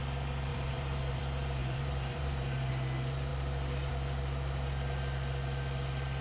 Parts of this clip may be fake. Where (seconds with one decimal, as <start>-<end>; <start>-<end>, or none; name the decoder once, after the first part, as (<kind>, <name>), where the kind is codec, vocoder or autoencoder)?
0.5-1.2 (vocoder, BigVGAN v2); 1.6-2.7